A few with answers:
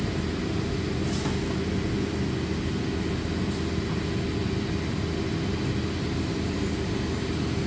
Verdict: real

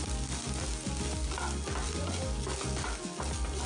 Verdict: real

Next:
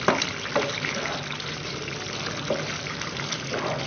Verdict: real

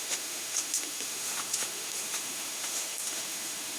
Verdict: fake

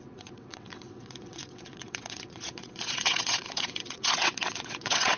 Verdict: fake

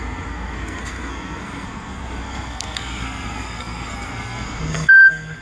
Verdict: fake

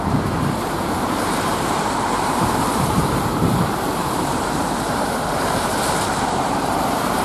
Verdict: fake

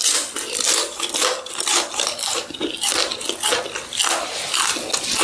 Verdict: real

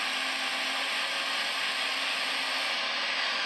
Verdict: real